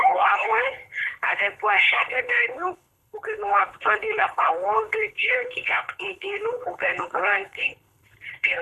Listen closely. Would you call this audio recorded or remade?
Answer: remade